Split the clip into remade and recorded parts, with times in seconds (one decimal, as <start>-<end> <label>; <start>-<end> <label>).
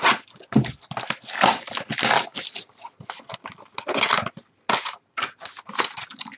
0.0-6.4 recorded